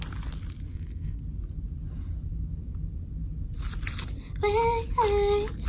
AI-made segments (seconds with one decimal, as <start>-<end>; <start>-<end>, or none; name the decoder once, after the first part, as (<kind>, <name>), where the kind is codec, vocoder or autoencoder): 0.7-1.2 (codec, SNAC)